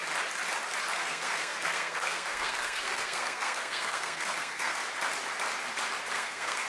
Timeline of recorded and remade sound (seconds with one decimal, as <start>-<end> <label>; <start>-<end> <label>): 0.0-1.0 recorded; 1.0-4.8 remade; 4.8-6.1 recorded; 6.1-6.7 remade